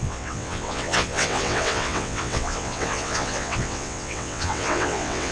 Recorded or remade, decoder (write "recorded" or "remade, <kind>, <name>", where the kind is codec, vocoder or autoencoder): remade, vocoder, WaveNeXt